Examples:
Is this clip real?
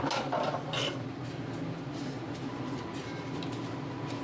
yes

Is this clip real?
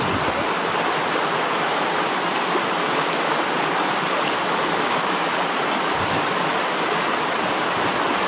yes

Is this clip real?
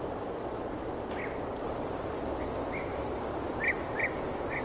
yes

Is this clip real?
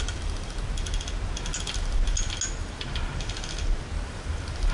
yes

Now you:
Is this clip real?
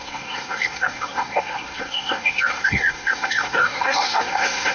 no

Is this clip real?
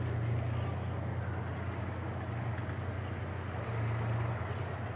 yes